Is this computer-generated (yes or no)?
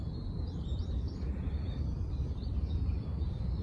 yes